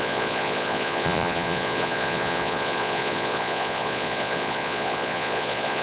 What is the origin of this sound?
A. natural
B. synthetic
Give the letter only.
B